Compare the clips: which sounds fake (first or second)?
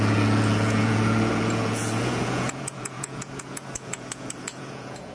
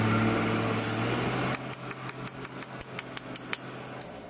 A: first